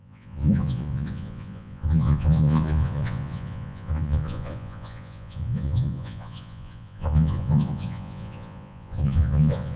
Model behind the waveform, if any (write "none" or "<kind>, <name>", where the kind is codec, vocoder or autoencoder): vocoder, Vocos